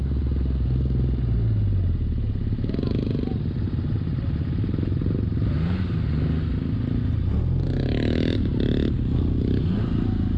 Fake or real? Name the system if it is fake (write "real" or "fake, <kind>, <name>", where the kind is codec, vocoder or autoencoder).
real